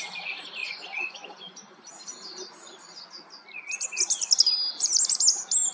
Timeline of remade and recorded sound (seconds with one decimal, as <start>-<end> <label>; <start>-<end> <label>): 0.0-0.6 recorded; 0.6-1.9 remade; 1.9-5.7 recorded